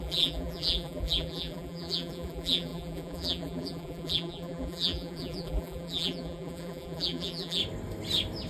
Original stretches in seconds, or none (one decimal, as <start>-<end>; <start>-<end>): 7.6-8.5